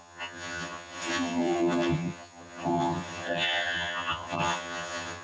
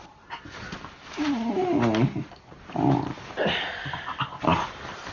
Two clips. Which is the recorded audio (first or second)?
second